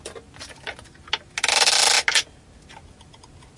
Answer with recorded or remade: recorded